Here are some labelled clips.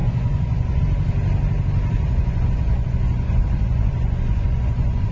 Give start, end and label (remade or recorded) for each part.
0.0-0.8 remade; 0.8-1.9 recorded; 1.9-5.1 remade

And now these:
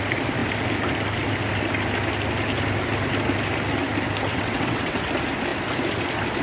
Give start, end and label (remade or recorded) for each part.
0.0-4.3 recorded; 4.3-5.1 remade; 5.1-6.4 recorded

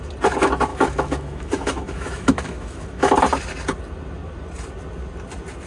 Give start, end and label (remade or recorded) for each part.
0.0-0.7 recorded; 0.7-3.1 remade; 3.1-5.7 recorded